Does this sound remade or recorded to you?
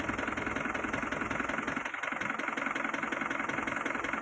recorded